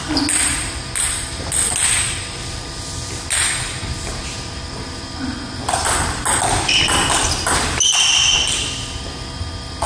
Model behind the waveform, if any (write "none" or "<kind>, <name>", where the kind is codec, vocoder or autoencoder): none